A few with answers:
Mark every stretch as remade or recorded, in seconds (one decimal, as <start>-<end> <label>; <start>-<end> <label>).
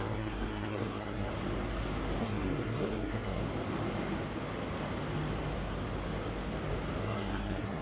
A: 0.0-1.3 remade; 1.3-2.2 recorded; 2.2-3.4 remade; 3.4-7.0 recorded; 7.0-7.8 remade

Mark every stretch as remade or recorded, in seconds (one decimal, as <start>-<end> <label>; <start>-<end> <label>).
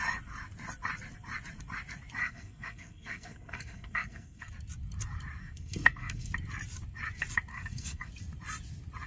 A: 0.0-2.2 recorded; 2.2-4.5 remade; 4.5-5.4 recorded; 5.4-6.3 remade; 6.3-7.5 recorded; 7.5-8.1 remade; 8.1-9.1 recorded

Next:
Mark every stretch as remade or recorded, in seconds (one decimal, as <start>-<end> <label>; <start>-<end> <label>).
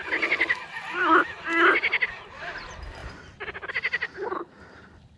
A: 0.0-5.2 recorded